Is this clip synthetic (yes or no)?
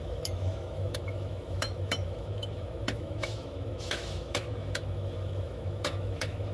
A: yes